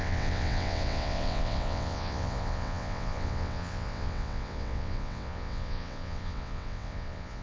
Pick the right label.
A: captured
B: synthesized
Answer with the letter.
B